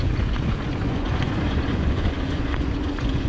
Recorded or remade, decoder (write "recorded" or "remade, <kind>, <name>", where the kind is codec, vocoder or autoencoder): remade, vocoder, Vocos